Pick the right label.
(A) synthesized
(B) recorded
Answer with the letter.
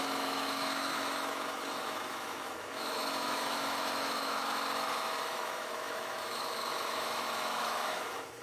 A